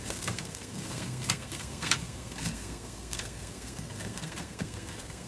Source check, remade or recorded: remade